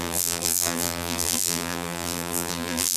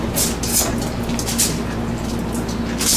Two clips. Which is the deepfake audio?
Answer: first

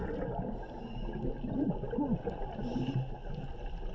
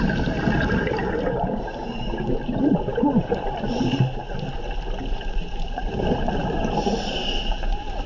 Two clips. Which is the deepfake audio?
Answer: second